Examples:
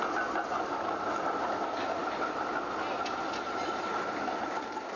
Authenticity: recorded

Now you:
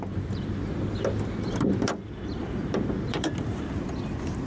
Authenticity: recorded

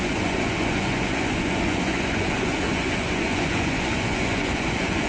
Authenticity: remade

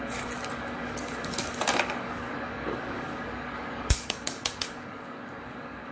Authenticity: remade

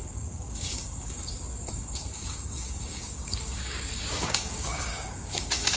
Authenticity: remade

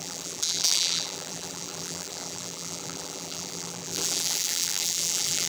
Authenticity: remade